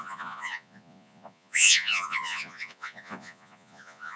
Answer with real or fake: fake